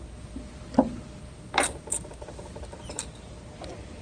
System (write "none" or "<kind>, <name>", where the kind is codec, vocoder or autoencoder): none